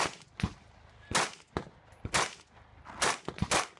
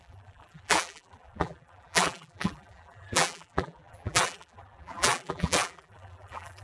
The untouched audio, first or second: first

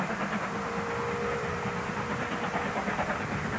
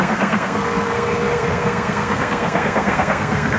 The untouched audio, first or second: first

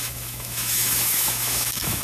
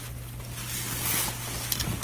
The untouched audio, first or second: second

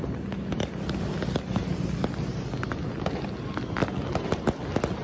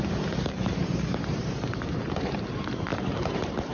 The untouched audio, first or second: first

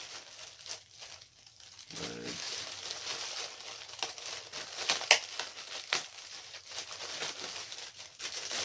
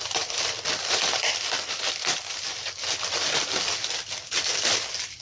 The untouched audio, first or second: first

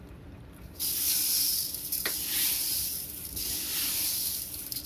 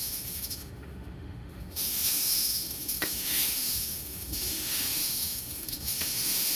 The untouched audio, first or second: first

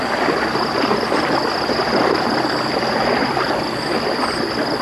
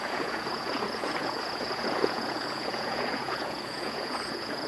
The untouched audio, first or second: first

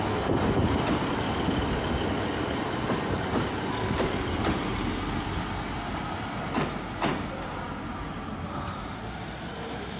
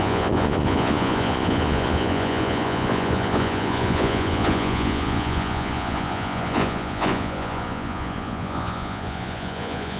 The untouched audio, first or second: first